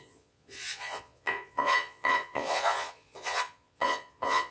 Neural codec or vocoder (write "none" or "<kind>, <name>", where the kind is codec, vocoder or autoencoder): vocoder, Vocos